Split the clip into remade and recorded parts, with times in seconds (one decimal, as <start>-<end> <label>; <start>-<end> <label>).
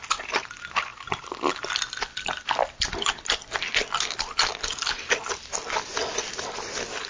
0.0-0.9 recorded; 0.9-5.2 remade; 5.2-7.1 recorded